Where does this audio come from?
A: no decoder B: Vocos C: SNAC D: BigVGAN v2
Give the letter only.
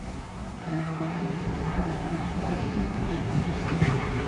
C